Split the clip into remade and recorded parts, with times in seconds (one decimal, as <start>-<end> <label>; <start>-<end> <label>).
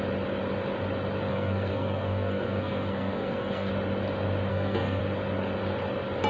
0.0-1.3 recorded; 1.3-3.7 remade; 3.7-4.5 recorded; 4.5-5.0 remade; 5.0-6.3 recorded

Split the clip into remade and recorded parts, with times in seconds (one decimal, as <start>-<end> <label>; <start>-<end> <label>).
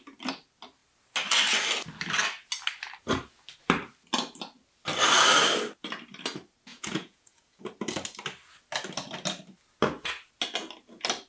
0.0-6.7 recorded; 6.7-7.6 remade; 7.6-11.3 recorded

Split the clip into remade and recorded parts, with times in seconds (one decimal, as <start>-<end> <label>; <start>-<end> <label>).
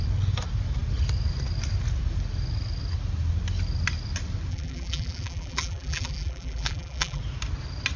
0.0-4.5 recorded; 4.5-7.2 remade; 7.2-8.0 recorded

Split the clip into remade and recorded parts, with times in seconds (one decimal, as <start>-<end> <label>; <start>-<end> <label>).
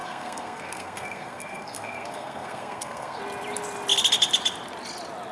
0.0-3.2 remade; 3.2-5.3 recorded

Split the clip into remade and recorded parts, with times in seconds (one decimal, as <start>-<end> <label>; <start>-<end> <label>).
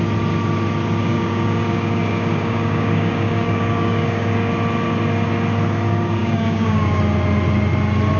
0.0-1.0 recorded; 1.0-4.5 remade; 4.5-6.2 recorded; 6.2-7.0 remade; 7.0-8.2 recorded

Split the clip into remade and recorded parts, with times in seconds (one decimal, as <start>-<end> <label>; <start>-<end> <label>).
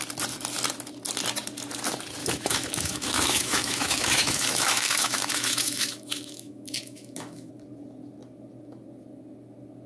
0.0-2.2 recorded; 2.2-7.5 remade; 7.5-9.9 recorded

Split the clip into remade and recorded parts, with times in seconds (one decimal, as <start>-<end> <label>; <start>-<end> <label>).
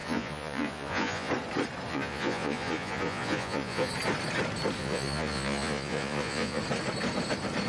0.0-1.3 remade; 1.3-1.9 recorded; 1.9-3.9 remade; 3.9-4.8 recorded; 4.8-6.6 remade; 6.6-7.7 recorded